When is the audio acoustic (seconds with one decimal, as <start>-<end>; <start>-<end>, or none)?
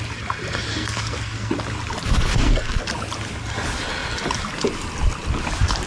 0.0-0.7; 1.5-2.3; 2.8-5.9